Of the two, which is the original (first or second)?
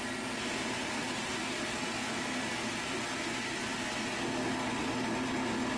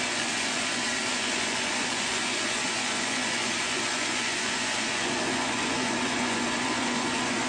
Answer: first